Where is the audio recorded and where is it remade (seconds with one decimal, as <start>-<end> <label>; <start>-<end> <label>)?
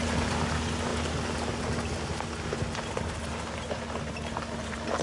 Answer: 0.0-5.0 recorded